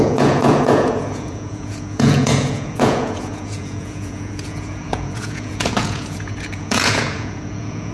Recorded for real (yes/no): no